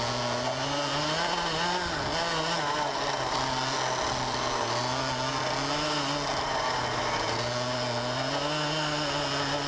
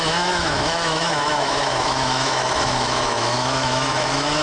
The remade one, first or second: second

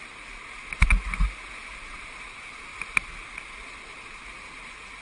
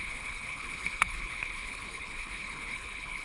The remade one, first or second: second